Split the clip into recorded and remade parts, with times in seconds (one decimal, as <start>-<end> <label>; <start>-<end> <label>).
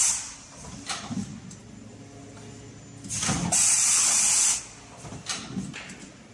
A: 0.0-6.3 recorded